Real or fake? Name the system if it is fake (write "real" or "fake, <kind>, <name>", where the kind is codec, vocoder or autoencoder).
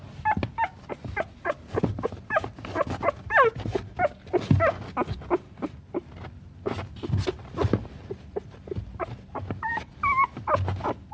real